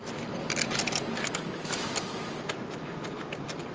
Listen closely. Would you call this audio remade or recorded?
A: recorded